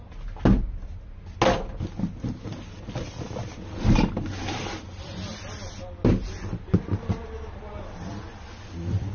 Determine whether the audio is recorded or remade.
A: recorded